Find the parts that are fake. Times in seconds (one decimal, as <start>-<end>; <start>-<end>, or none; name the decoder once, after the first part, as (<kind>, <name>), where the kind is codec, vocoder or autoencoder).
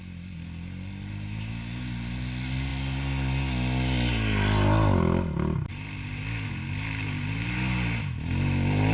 none